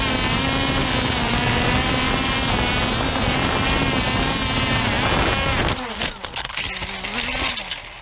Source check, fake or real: real